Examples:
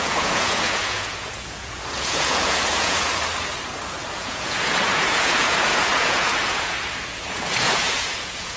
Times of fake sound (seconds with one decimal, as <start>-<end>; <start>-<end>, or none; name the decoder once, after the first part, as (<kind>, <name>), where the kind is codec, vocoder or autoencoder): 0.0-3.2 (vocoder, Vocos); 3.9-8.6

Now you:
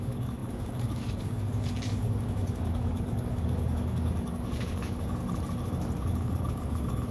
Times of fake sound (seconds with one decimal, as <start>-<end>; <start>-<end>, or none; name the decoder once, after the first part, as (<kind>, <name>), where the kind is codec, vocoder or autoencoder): 0.0-5.2 (codec, DAC); 6.0-7.1

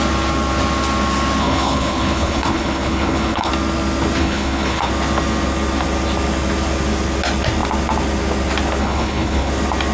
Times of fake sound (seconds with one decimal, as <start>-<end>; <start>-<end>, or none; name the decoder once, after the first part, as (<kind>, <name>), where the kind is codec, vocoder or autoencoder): 1.4-3.5 (codec, HILCodec); 4.2-4.9; 8.8-9.5

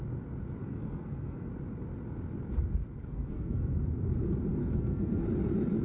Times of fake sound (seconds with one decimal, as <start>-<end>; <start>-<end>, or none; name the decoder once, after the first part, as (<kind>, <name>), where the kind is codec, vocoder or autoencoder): 0.6-1.5 (codec, SNAC); 3.0-3.7; 4.6-5.2